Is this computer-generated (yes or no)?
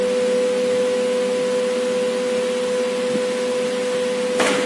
no